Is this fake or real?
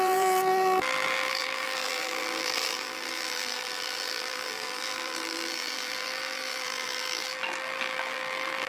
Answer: fake